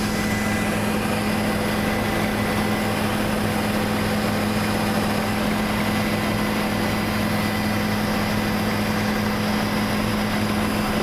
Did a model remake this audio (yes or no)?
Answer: no